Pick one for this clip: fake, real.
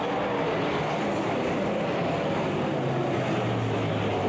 real